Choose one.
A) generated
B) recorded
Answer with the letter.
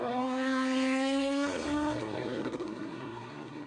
A